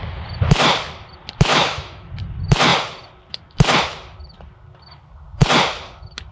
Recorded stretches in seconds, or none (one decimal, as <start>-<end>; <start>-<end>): 0.0-1.5; 2.1-6.3